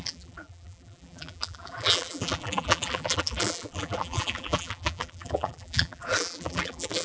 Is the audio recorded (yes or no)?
no